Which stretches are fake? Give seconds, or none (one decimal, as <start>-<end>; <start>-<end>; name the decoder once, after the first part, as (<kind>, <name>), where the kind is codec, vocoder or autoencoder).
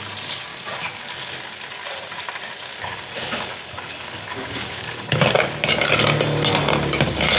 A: 0.5-1.3 (codec, DAC); 2.7-5.2